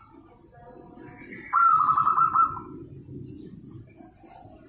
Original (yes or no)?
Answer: yes